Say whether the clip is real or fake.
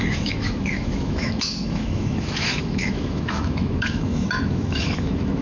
fake